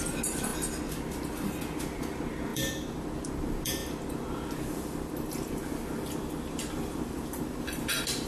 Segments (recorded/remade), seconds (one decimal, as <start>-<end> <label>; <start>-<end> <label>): 0.0-0.5 remade; 0.5-1.7 recorded; 1.7-3.8 remade; 3.8-5.5 recorded; 5.5-8.3 remade